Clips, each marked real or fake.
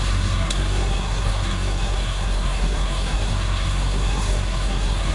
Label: fake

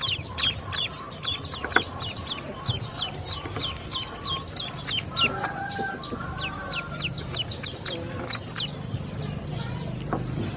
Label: real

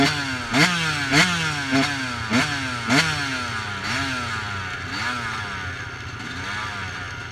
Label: real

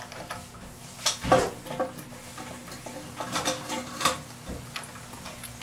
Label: real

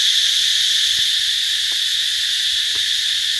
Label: real